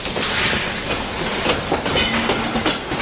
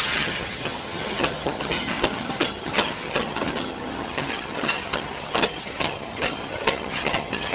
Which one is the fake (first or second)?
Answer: second